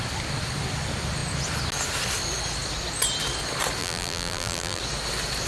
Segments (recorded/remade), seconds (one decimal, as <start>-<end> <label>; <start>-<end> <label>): 0.0-3.8 recorded; 3.8-4.8 remade; 4.8-5.5 recorded